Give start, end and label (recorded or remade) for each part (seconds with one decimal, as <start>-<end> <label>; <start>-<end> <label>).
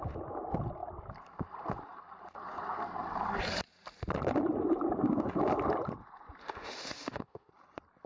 0.0-6.4 recorded; 6.4-7.5 remade; 7.5-8.1 recorded